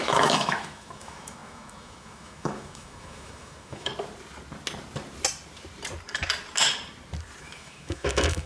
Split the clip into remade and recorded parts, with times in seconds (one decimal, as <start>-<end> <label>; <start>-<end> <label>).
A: 0.0-3.9 remade; 3.9-7.4 recorded; 7.4-8.5 remade